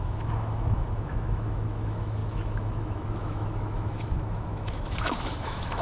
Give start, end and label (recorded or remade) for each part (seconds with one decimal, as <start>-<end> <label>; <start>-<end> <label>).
0.0-5.8 remade